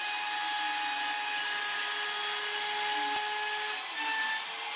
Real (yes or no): yes